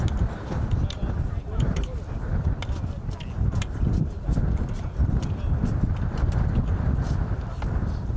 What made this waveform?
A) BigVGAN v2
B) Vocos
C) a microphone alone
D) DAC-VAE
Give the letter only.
C